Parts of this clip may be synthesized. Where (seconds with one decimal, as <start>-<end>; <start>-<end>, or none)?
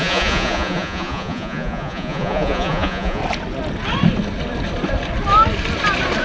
0.0-3.2